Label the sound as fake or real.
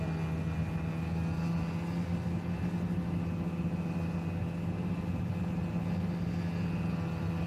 real